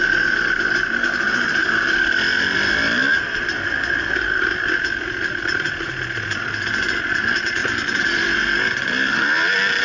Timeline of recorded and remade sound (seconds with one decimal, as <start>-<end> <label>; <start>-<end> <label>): 0.0-9.8 recorded